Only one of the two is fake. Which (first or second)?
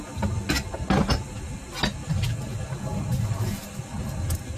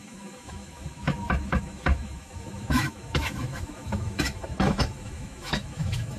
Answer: second